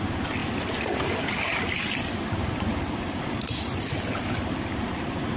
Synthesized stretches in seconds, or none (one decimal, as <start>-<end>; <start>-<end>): none